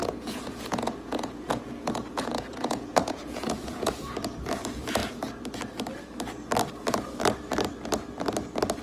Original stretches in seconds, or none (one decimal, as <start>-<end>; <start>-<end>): 3.9-8.8